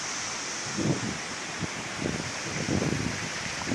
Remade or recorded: recorded